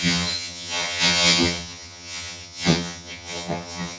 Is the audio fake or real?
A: fake